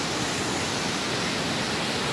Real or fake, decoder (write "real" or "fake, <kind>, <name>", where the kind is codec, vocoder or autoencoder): real